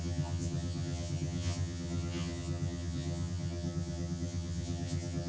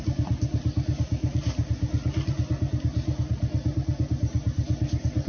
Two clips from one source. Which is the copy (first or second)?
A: first